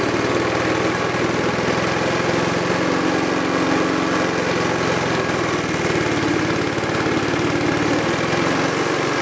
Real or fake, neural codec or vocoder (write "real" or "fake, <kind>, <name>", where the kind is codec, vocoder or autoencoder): real